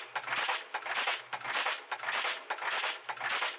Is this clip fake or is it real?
real